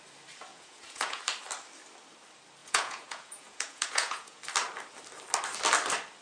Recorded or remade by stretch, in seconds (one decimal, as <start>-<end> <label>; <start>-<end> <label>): 0.0-0.5 recorded; 0.5-1.2 remade; 1.2-2.6 recorded; 2.6-4.4 remade; 4.4-6.2 recorded